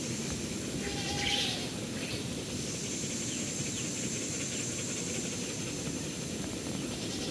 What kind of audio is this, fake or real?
real